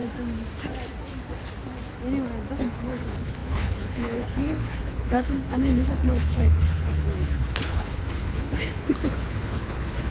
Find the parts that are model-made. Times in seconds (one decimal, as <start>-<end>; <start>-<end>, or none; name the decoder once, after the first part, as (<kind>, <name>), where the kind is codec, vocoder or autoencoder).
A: 2.6-10.1 (codec, HILCodec)